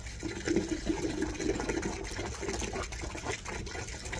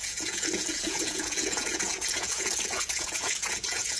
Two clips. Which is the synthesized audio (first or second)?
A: second